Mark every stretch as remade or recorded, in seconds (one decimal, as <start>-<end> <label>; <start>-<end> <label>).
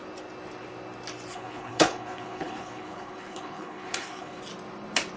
0.0-1.3 recorded; 1.3-4.4 remade; 4.4-5.2 recorded